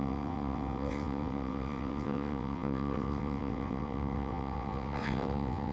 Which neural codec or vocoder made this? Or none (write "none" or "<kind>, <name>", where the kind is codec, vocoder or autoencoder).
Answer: vocoder, WaveNeXt